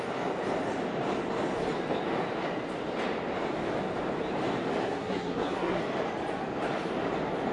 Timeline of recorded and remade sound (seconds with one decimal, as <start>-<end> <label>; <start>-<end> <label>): 0.0-4.8 recorded; 4.8-5.8 remade; 5.8-7.5 recorded